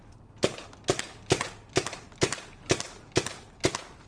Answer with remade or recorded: recorded